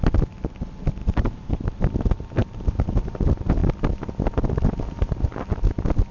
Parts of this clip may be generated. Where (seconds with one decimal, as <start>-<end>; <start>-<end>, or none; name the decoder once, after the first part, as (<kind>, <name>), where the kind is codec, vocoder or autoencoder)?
1.0-1.6 (vocoder, BigVGAN v2); 2.4-3.1